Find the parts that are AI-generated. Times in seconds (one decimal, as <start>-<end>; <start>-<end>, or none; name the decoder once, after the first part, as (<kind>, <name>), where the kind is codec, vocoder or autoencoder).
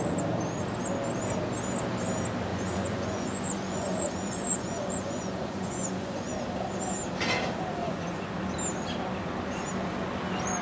2.5-6.4 (vocoder, Vocos); 7.8-8.3